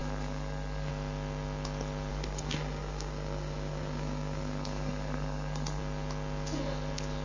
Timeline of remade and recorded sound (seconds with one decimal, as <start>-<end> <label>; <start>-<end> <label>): 0.0-0.9 remade; 0.9-2.1 recorded; 2.1-5.8 remade; 5.8-7.2 recorded